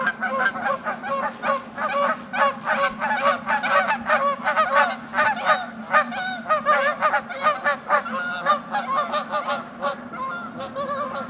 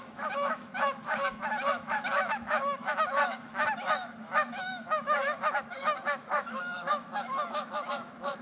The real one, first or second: first